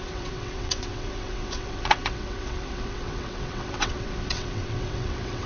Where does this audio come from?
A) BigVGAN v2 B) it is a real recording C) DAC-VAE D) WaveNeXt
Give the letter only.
D